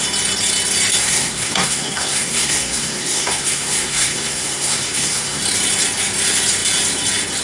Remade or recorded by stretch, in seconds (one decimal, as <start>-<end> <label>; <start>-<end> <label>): 0.0-1.0 recorded; 1.0-5.4 remade; 5.4-7.4 recorded